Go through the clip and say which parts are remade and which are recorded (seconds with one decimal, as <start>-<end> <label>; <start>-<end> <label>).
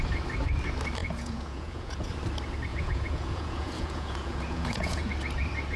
0.0-1.0 recorded; 1.0-2.1 remade; 2.1-2.7 recorded; 2.7-5.1 remade; 5.1-5.8 recorded